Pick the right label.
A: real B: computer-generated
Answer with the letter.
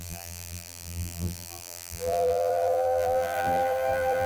B